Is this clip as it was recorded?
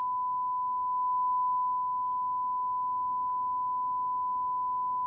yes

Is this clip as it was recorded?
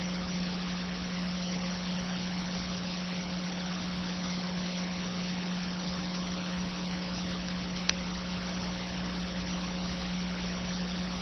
no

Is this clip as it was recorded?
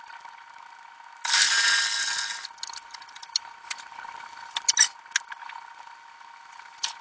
yes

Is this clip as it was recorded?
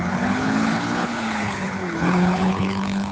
no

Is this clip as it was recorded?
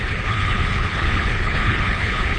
no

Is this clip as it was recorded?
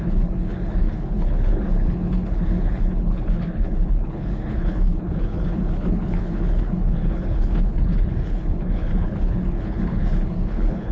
no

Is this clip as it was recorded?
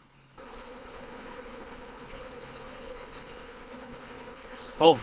no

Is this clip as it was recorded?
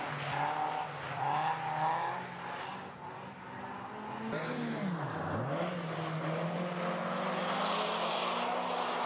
yes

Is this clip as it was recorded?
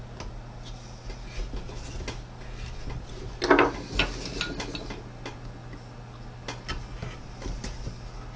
yes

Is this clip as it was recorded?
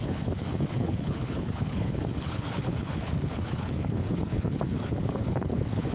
no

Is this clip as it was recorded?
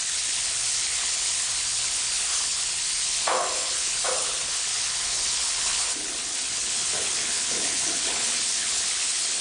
no